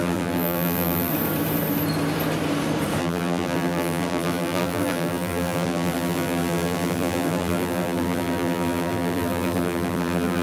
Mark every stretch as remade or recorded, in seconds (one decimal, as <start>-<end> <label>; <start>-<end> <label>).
0.0-1.1 remade; 1.1-3.0 recorded; 3.0-10.4 remade